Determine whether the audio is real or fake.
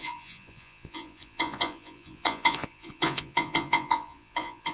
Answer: fake